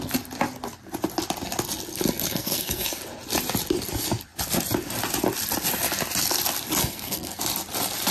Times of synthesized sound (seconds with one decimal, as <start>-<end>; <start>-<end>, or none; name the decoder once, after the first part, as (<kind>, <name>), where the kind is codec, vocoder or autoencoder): 1.9-3.0 (codec, SNAC); 6.8-7.4